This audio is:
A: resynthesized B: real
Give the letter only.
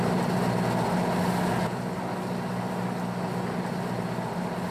B